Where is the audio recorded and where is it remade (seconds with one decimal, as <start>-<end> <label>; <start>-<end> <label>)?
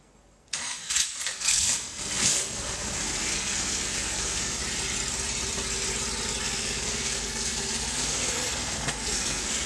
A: 0.0-4.6 remade; 4.6-6.4 recorded; 6.4-9.7 remade